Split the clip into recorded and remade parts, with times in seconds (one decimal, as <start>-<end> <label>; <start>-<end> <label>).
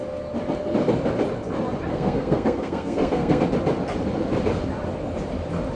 0.0-1.9 recorded; 1.9-3.4 remade; 3.4-5.8 recorded